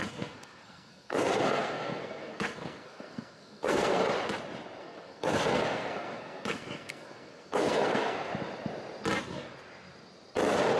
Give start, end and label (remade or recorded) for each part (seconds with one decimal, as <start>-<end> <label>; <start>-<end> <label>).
0.0-4.0 remade; 4.0-4.8 recorded; 4.8-8.3 remade; 8.3-10.8 recorded